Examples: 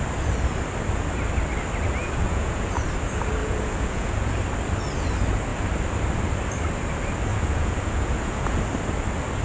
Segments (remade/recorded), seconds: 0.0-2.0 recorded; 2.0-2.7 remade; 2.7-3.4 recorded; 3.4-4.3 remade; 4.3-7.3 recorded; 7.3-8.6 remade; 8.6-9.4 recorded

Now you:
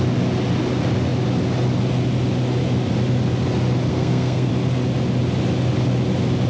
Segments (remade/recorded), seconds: 0.0-3.9 recorded; 3.9-4.5 remade; 4.5-6.5 recorded